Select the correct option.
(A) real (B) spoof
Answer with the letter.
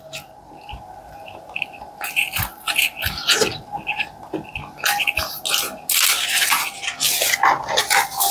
A